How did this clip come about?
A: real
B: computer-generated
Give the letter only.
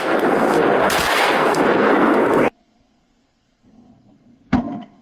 B